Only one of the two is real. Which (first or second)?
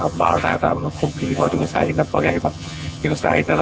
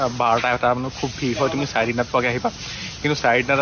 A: second